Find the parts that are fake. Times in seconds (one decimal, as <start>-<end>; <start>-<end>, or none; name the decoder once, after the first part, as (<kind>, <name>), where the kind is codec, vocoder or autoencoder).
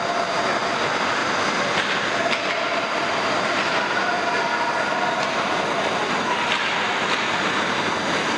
none